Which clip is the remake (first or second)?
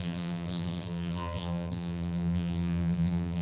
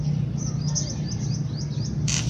first